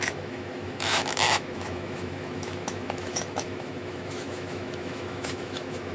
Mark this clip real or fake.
fake